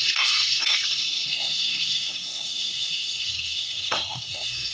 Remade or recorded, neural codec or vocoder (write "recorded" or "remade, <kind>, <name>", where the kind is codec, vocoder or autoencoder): remade, codec, SNAC